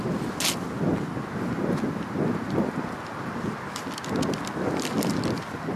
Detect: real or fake real